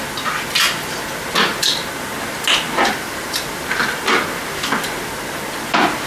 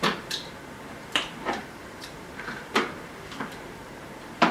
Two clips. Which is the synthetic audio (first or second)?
second